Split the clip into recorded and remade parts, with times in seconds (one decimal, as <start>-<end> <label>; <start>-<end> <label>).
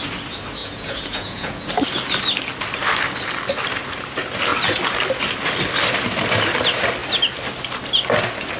0.0-0.6 recorded; 0.6-1.7 remade; 1.7-8.6 recorded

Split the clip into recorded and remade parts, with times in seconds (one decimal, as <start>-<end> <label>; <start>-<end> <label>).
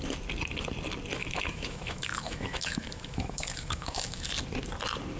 0.0-1.2 recorded; 1.2-4.3 remade; 4.3-5.2 recorded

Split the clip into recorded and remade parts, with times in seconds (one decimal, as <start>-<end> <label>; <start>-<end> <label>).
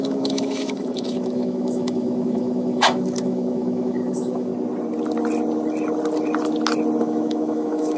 0.0-4.5 remade; 4.5-7.0 recorded; 7.0-8.0 remade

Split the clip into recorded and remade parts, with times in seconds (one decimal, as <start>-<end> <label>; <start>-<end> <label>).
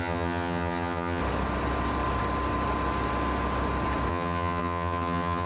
0.0-1.2 remade; 1.2-4.1 recorded; 4.1-5.5 remade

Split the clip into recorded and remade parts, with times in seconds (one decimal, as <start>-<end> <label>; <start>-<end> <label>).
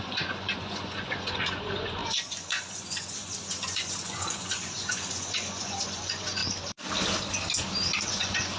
0.0-6.4 remade; 6.4-8.1 recorded; 8.1-8.6 remade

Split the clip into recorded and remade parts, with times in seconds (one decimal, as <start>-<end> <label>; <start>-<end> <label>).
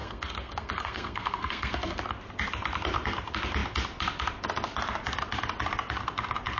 0.0-2.0 remade; 2.0-6.6 recorded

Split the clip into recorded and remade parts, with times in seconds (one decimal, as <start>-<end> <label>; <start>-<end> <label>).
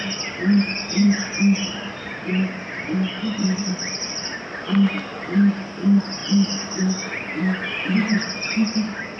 0.0-5.1 recorded; 5.1-5.7 remade; 5.7-9.2 recorded